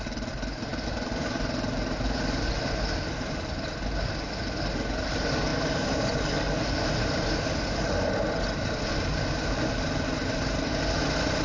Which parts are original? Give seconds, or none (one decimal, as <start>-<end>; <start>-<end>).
0.0-11.4